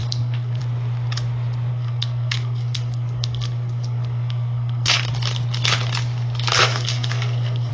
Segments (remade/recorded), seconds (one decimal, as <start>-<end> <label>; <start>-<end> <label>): 0.0-0.6 remade; 0.6-1.7 recorded; 1.7-5.1 remade; 5.1-6.6 recorded; 6.6-7.7 remade